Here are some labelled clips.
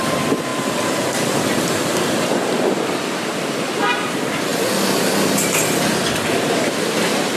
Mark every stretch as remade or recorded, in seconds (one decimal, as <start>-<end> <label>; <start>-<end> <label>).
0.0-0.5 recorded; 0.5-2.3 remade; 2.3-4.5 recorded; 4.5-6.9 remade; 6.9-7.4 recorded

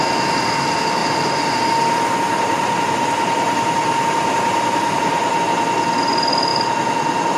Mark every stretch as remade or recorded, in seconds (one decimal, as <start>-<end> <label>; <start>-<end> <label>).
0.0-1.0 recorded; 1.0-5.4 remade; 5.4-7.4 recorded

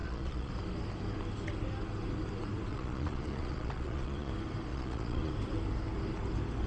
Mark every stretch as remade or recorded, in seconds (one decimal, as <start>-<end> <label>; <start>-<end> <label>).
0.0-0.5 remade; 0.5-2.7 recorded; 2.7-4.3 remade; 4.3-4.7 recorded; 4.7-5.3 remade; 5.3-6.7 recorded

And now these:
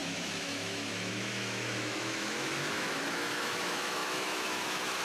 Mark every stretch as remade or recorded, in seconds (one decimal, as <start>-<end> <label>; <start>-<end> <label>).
0.0-5.0 remade

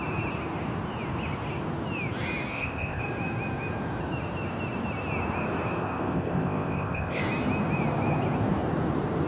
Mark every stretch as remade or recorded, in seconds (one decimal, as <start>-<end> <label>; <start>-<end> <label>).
0.0-2.5 recorded; 2.5-3.0 remade; 3.0-5.8 recorded; 5.8-7.2 remade; 7.2-9.3 recorded

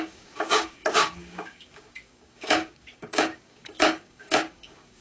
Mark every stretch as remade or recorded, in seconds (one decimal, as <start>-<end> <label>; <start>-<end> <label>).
0.0-5.0 remade